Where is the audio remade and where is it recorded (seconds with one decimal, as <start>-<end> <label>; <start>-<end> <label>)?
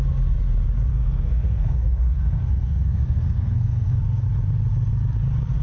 0.0-0.9 recorded; 0.9-4.2 remade; 4.2-5.6 recorded